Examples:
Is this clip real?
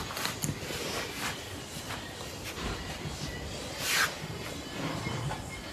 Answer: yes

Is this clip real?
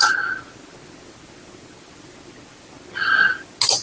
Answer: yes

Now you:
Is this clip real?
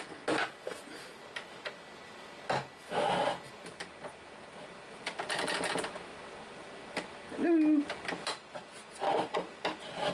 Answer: yes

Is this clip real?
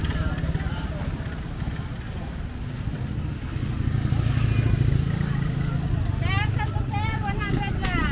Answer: yes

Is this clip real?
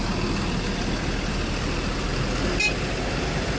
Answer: yes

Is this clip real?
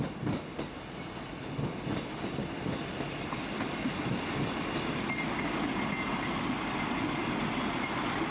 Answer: yes